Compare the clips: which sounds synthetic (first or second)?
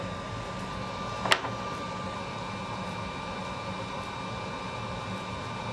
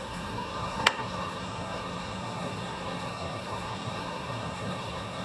second